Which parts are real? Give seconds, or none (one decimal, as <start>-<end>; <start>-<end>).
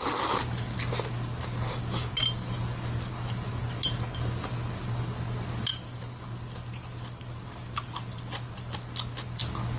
0.0-9.8